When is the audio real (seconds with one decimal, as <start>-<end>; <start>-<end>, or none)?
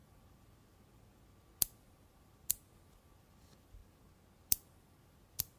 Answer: 0.0-5.6